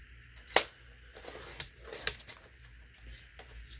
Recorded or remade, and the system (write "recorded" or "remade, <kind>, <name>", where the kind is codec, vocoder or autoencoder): recorded